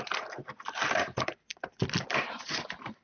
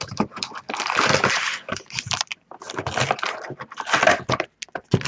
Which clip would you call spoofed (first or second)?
first